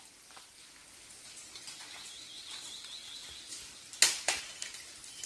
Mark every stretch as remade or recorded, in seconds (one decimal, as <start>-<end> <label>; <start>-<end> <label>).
0.0-5.3 recorded